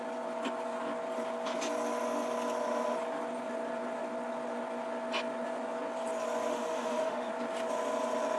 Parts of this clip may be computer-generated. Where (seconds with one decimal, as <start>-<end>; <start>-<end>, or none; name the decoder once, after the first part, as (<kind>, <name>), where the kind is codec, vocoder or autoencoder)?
6.5-7.3 (autoencoder, DAC-VAE)